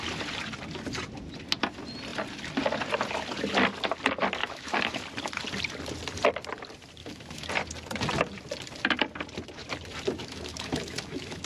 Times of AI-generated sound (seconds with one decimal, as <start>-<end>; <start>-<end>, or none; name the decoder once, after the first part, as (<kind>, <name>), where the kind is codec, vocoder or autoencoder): 4.4-5.0 (autoencoder, DAC-VAE); 7.0-7.5; 10.2-11.5